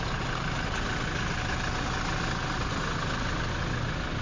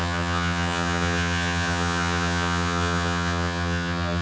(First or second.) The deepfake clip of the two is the second